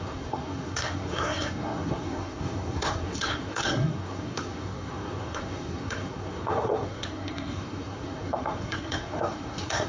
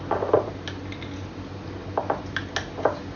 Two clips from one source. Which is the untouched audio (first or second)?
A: second